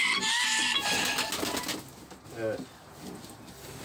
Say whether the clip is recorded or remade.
recorded